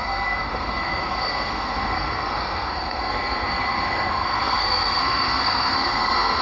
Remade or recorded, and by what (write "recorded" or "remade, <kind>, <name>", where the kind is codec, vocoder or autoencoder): remade, codec, SNAC